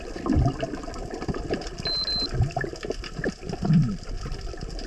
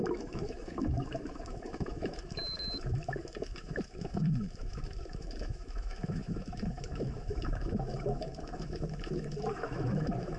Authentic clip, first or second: first